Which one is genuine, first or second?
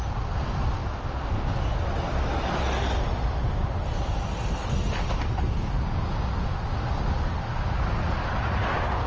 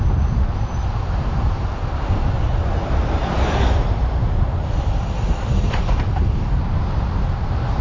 first